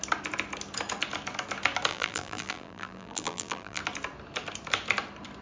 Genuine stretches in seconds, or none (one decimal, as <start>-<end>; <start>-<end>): 0.0-1.9; 3.8-5.4

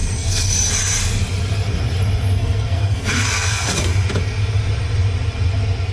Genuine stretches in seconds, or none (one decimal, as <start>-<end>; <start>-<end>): 0.7-2.3; 3.9-5.9

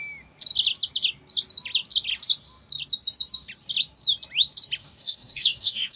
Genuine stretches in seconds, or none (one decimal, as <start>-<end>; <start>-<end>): 0.0-4.8

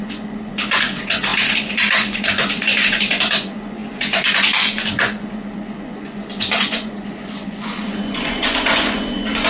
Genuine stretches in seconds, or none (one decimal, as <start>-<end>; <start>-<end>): none

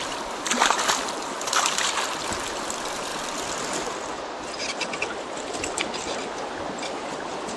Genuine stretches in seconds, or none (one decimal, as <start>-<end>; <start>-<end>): 0.0-7.6